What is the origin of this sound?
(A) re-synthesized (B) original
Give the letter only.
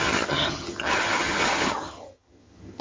A